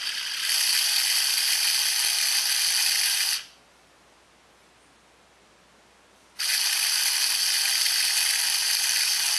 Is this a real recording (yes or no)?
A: yes